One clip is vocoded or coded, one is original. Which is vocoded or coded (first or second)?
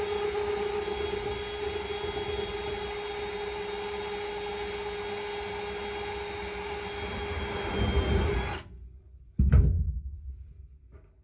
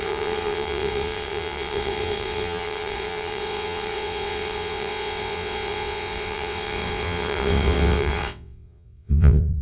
second